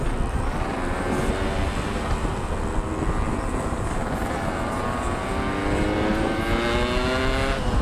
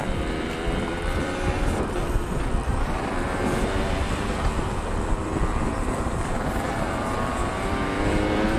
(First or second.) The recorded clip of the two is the first